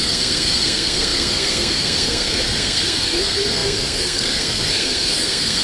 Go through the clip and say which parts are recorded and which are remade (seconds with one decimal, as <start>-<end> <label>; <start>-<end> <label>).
0.0-5.6 remade